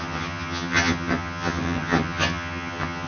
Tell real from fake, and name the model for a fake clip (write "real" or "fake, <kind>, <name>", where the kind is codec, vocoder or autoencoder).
fake, vocoder, HiFi-GAN